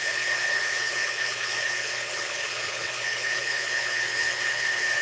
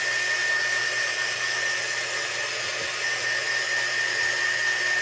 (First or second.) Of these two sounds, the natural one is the second